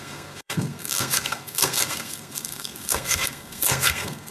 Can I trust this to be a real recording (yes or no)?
no